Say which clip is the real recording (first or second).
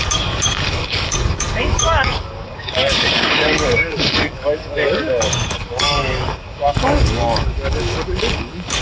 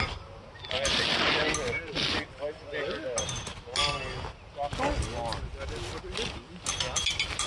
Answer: second